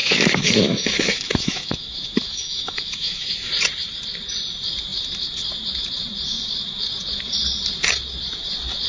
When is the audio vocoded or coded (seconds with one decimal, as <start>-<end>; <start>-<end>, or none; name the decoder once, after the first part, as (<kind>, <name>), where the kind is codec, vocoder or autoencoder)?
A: 0.0-3.5 (autoencoder, DAC-VAE)